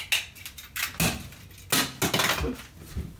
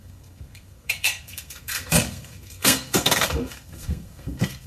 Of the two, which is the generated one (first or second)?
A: second